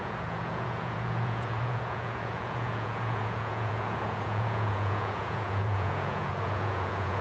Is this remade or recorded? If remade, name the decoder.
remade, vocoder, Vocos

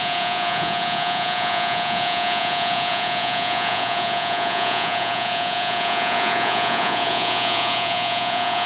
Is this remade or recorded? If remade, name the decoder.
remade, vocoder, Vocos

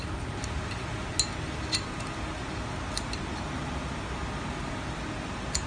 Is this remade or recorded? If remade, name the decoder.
recorded